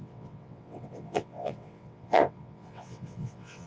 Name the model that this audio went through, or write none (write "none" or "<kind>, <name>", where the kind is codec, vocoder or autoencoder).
vocoder, WaveNeXt